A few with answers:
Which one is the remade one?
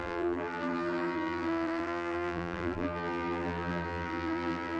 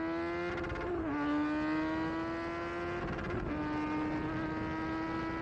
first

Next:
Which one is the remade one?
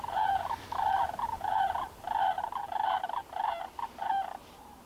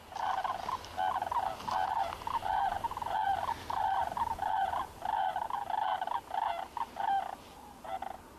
first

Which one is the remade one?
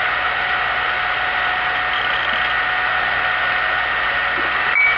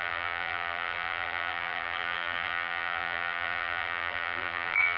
second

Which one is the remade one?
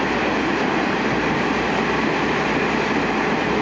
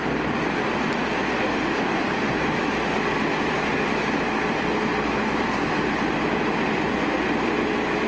first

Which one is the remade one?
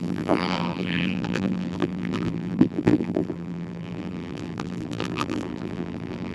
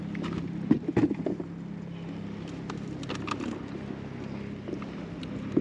first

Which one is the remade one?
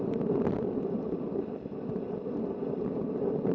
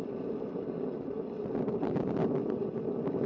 first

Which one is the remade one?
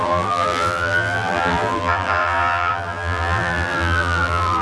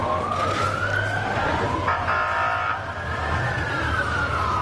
first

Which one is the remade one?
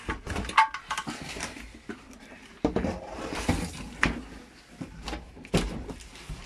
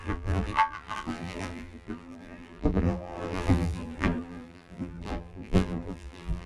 second